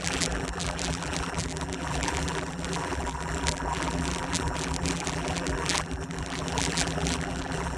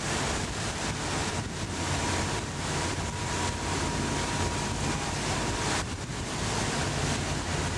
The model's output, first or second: first